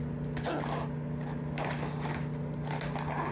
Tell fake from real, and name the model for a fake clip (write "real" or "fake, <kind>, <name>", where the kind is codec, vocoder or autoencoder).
real